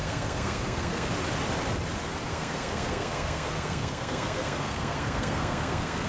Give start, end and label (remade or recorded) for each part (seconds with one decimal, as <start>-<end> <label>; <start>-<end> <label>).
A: 0.0-1.1 remade; 1.1-2.3 recorded; 2.3-6.1 remade